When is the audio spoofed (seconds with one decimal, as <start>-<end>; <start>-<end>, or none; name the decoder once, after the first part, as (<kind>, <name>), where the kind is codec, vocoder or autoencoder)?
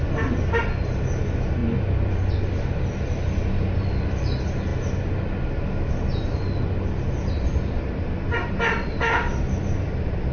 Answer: none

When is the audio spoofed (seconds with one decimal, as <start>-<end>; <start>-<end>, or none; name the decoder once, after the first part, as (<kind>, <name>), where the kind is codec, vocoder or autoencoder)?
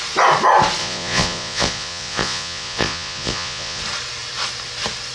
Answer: 0.8-3.8 (vocoder, Vocos)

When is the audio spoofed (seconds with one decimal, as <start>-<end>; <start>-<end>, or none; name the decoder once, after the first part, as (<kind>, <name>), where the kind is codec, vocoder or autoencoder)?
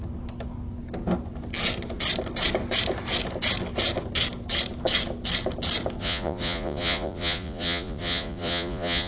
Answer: 6.0-9.1 (vocoder, Vocos)